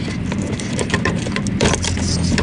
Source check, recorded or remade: recorded